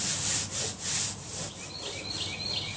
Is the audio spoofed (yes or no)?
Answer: no